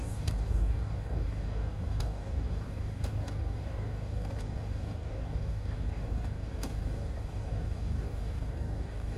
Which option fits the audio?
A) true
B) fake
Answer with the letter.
B